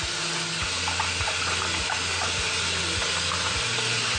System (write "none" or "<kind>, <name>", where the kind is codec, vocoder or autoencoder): none